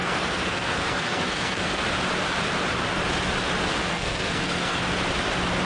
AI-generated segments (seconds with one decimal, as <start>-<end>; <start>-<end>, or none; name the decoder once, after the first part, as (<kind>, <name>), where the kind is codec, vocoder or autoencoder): 0.0-1.8 (codec, SNAC); 3.8-4.8